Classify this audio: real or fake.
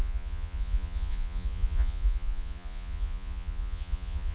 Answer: fake